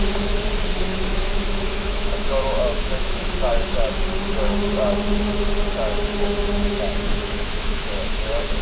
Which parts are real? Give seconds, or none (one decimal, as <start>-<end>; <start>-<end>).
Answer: 0.0-0.9; 3.5-6.1